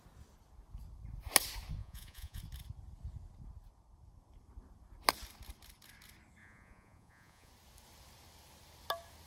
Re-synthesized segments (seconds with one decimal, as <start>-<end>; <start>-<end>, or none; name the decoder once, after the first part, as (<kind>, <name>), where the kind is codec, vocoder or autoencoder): 1.8-2.4 (vocoder, Vocos); 6.4-7.5